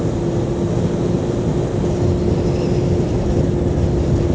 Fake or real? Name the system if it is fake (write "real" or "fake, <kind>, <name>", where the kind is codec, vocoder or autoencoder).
real